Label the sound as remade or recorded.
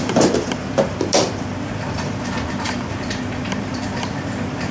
remade